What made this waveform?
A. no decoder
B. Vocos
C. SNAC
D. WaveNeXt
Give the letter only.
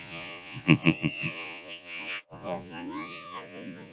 B